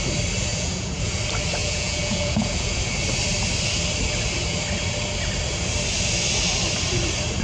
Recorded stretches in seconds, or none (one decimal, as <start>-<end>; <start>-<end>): 0.0-0.5; 1.2-1.6; 2.8-7.4